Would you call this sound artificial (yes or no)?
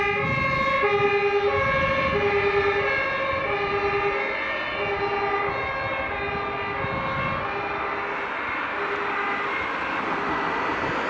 no